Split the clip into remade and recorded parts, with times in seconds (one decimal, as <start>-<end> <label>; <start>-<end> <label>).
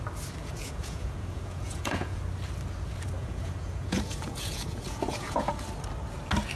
0.0-0.4 recorded; 0.4-2.2 remade; 2.2-3.2 recorded; 3.2-5.5 remade; 5.5-6.6 recorded